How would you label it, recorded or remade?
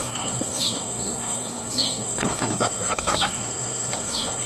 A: remade